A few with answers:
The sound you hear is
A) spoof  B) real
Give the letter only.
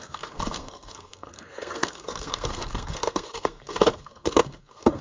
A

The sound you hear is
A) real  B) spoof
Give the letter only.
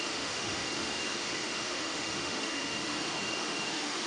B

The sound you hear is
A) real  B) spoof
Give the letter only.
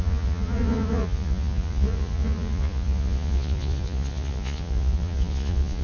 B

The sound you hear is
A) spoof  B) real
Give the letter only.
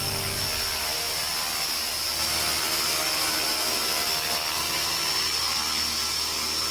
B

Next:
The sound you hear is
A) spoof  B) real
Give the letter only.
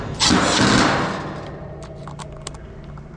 B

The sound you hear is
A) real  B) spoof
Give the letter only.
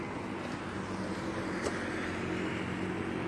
A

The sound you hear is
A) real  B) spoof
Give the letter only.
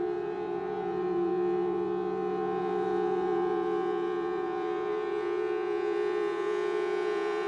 B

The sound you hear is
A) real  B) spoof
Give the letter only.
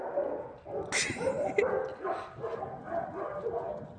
A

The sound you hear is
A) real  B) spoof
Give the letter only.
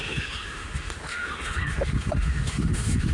B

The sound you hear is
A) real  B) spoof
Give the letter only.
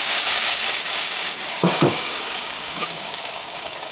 B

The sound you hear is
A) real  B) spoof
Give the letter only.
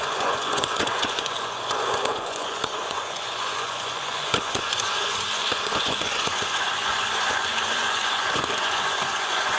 B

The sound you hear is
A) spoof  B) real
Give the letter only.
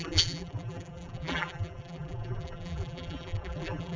A